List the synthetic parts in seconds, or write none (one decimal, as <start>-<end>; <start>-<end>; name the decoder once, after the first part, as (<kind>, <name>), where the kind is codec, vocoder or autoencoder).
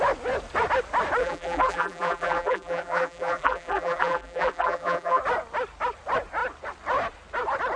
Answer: 1.2-5.2 (vocoder, BigVGAN v2)